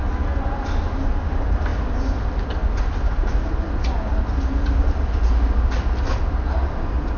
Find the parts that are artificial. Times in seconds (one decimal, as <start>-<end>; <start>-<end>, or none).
none